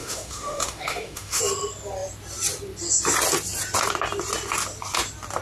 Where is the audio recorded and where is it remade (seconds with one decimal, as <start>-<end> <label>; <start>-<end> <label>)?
0.0-1.4 remade; 1.4-5.4 recorded

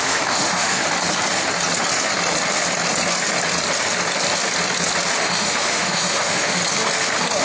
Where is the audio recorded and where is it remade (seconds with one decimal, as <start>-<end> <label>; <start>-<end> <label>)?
0.0-0.8 remade; 0.8-5.2 recorded; 5.2-6.6 remade; 6.6-7.4 recorded

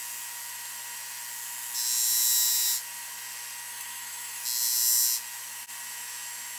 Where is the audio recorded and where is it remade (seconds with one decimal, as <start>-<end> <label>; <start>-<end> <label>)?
0.0-3.7 recorded; 3.7-4.4 remade; 4.4-6.6 recorded

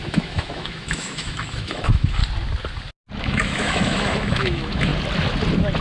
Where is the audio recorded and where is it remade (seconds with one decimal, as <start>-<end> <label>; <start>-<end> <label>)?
0.0-2.2 remade; 2.2-3.2 recorded; 3.2-4.9 remade; 4.9-5.8 recorded

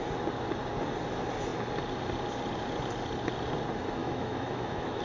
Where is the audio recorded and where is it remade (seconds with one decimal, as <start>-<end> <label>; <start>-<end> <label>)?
0.0-4.0 recorded; 4.0-5.0 remade

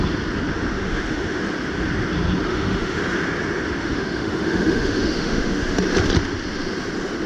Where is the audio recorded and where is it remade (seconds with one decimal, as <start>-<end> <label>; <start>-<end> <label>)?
0.0-0.5 recorded; 0.5-1.4 remade; 1.4-2.5 recorded; 2.5-3.0 remade; 3.0-3.8 recorded; 3.8-5.6 remade; 5.6-7.3 recorded

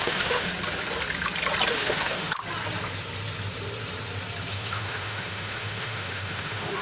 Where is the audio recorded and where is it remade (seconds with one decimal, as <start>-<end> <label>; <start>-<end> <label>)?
0.0-0.5 remade; 0.5-1.7 recorded; 1.7-2.3 remade; 2.3-4.5 recorded; 4.5-6.8 remade